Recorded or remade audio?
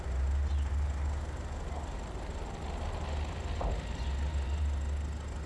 recorded